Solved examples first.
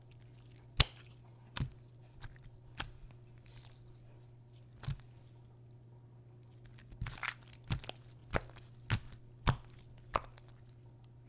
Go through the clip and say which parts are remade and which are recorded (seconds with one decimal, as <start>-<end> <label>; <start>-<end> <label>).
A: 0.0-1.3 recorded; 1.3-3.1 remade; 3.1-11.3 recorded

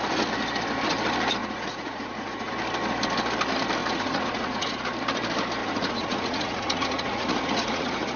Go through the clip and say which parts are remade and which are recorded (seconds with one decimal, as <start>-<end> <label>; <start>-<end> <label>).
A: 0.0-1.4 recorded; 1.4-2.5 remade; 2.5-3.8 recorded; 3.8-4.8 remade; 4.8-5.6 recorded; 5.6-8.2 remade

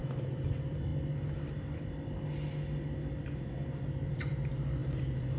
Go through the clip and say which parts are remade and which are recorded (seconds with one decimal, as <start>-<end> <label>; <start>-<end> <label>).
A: 0.0-0.9 remade; 0.9-4.1 recorded; 4.1-5.4 remade

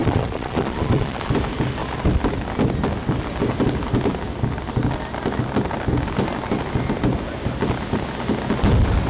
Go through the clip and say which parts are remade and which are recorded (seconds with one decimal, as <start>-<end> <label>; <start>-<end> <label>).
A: 0.0-1.3 remade; 1.3-9.1 recorded